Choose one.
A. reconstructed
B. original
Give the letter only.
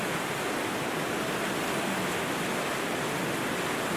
B